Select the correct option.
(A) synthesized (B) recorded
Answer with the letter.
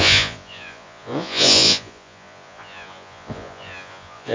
A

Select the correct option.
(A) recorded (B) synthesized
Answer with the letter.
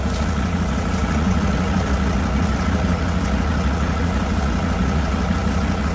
B